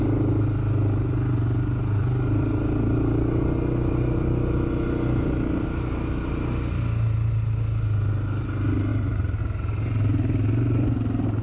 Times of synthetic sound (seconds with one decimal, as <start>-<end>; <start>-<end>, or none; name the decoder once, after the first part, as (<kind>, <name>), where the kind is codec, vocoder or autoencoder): 8.9-9.4 (vocoder, BigVGAN v2)